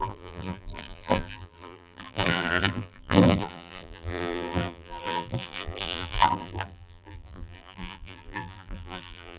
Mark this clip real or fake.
fake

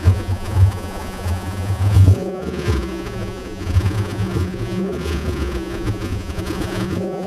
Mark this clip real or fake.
fake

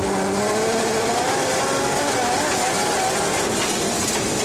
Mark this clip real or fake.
real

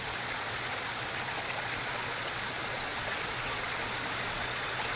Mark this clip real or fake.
fake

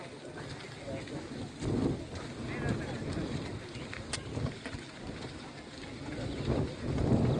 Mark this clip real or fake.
real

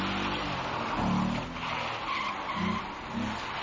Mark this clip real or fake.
real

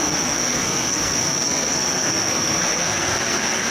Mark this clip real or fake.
fake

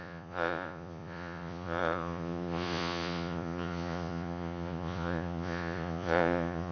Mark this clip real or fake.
fake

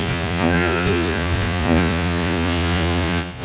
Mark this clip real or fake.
fake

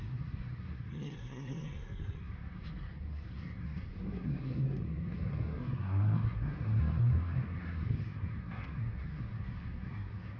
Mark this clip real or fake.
fake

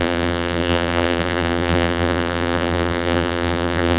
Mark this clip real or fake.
fake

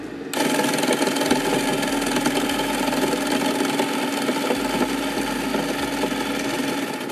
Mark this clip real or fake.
real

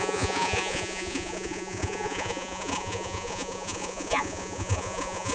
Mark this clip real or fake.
fake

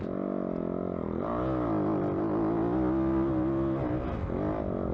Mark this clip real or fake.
real